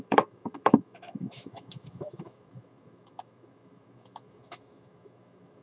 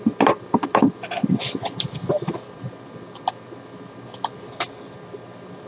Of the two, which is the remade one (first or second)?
first